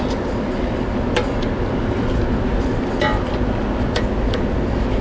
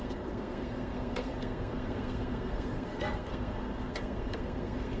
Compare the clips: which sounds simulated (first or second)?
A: second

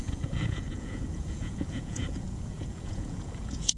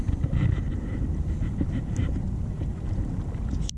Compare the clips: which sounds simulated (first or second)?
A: first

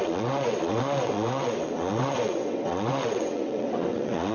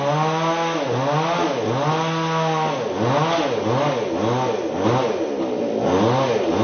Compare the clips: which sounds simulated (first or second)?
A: first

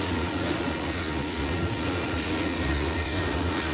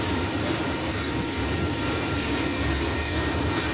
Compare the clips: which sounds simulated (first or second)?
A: first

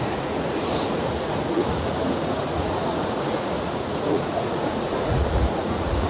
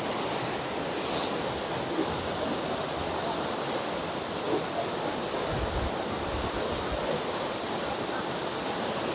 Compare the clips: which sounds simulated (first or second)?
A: first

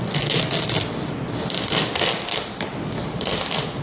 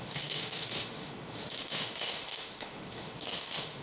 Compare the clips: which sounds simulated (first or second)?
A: second